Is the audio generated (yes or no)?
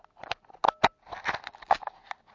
no